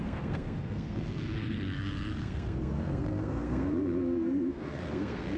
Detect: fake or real fake